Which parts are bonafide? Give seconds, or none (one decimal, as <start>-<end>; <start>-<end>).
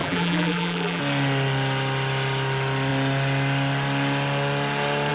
1.0-5.1